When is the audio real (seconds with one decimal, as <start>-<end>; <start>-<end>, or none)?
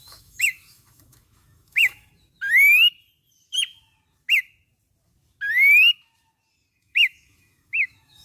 2.1-6.8